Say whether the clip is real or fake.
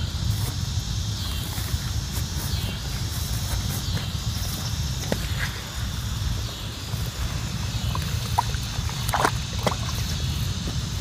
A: real